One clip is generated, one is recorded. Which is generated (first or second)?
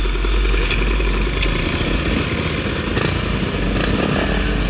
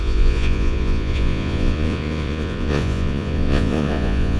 second